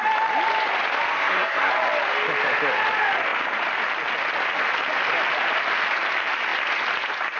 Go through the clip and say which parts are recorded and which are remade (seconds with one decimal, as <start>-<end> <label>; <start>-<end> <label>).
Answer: 0.0-1.1 recorded; 1.1-1.7 remade; 1.7-7.4 recorded